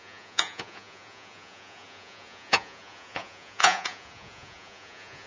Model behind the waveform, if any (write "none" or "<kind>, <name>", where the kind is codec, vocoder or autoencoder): vocoder, Vocos